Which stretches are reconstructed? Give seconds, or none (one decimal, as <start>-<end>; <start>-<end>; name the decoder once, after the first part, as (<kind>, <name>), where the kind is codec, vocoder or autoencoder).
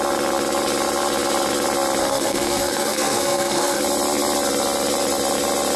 2.0-3.8 (codec, SNAC)